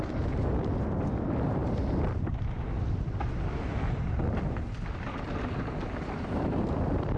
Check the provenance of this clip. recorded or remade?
remade